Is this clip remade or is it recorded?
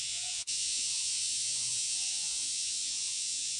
remade